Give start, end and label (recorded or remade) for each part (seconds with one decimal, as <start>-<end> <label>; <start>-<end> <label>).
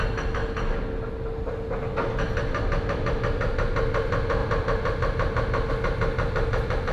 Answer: 0.0-6.9 recorded